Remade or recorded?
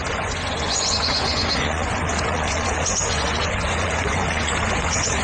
remade